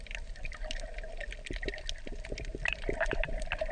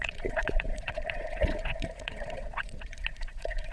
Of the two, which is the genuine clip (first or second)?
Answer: first